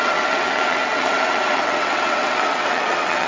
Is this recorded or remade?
remade